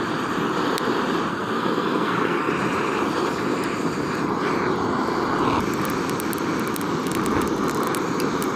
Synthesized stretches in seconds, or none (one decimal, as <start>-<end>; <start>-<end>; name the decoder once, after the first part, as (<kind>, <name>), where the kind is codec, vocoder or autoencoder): 1.3-2.5 (codec, SNAC)